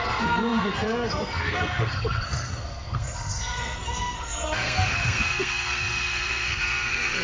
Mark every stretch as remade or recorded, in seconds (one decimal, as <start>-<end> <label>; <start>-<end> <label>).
0.0-7.2 remade